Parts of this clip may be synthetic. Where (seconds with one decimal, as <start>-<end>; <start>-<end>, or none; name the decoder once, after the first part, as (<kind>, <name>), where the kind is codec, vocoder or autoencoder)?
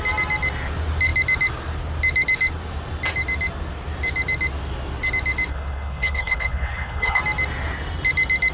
5.5-7.2 (codec, HILCodec)